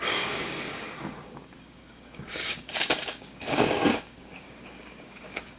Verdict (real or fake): fake